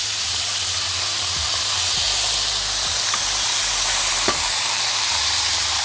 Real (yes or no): no